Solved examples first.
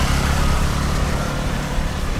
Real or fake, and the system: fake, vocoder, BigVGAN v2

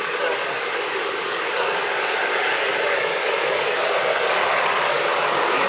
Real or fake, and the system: fake, codec, DAC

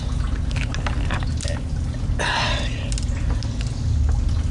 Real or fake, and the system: real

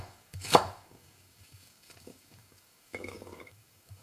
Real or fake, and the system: fake, codec, DAC